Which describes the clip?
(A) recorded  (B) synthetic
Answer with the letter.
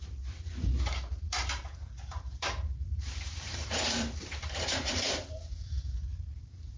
B